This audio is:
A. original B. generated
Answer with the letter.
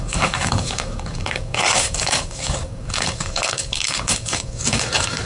B